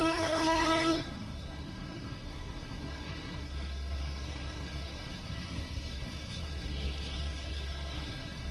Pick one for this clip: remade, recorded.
remade